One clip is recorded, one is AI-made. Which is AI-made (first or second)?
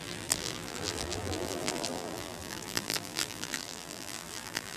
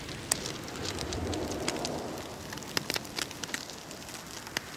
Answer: first